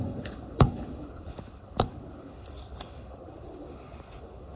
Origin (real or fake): fake